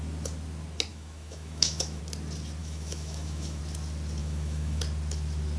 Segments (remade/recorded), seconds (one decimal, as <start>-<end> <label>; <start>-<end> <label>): 0.0-0.9 recorded; 0.9-2.0 remade; 2.0-2.6 recorded; 2.6-3.6 remade; 3.6-4.2 recorded; 4.2-4.8 remade; 4.8-5.6 recorded

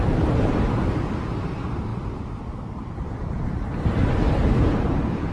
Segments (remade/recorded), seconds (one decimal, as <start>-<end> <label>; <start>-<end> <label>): 0.0-5.3 recorded

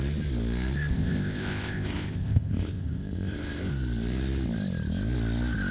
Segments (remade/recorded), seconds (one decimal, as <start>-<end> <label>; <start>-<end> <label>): 0.0-0.9 recorded; 0.9-3.7 remade; 3.7-5.7 recorded

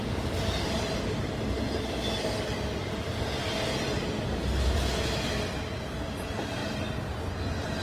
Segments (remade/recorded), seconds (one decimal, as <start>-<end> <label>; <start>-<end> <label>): 0.0-7.8 recorded

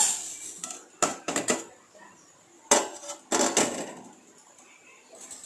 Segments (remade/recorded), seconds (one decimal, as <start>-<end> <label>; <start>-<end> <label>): 0.0-5.5 recorded

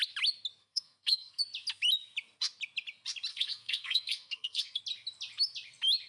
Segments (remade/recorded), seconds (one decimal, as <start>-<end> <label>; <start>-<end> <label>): 0.0-0.6 recorded; 0.6-1.4 remade; 1.4-3.3 recorded; 3.3-4.8 remade; 4.8-6.1 recorded

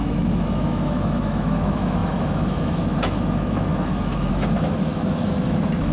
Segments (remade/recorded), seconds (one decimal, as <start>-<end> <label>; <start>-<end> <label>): 0.0-5.9 remade

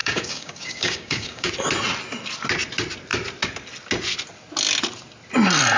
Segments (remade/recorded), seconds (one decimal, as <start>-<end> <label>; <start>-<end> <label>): 0.0-1.5 remade; 1.5-5.8 recorded